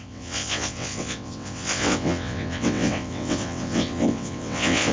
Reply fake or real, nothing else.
fake